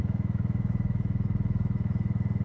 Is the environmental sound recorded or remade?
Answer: remade